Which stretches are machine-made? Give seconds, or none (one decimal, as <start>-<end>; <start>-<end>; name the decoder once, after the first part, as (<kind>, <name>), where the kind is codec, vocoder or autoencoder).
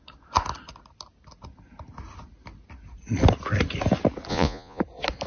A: 4.3-4.8 (vocoder, Vocos)